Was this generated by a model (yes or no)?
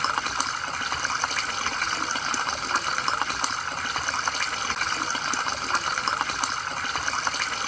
no